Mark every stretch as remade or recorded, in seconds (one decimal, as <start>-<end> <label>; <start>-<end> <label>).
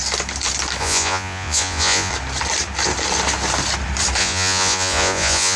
0.0-0.8 recorded; 0.8-2.1 remade; 2.1-4.2 recorded; 4.2-5.6 remade